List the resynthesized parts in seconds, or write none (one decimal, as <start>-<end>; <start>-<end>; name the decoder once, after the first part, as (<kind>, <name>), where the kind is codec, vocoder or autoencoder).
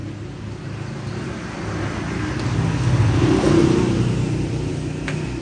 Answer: none